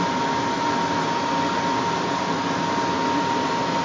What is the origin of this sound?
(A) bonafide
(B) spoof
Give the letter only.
A